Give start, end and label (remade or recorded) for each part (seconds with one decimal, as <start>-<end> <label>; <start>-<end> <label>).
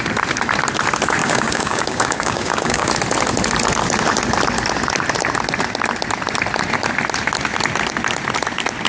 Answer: 0.0-1.2 recorded; 1.2-2.9 remade; 2.9-8.9 recorded